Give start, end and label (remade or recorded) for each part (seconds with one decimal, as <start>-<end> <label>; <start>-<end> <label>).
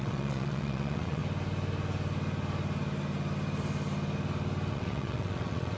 0.0-1.2 remade; 1.2-4.7 recorded; 4.7-5.8 remade